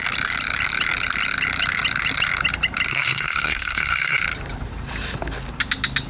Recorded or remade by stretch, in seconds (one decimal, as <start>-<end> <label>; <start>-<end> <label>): 0.0-2.9 recorded; 2.9-4.2 remade; 4.2-6.1 recorded